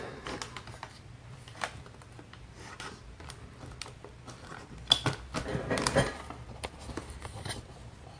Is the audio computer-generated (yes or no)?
no